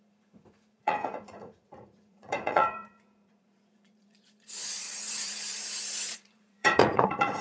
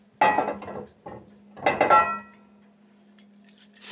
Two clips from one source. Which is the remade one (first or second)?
first